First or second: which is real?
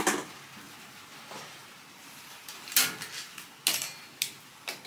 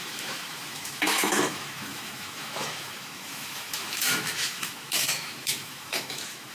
first